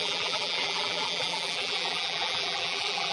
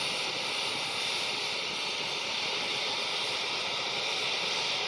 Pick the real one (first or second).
second